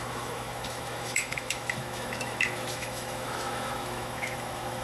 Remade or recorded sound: remade